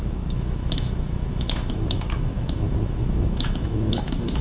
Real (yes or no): no